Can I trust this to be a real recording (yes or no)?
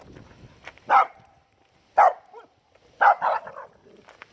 yes